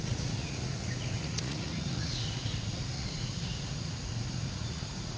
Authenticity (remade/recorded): remade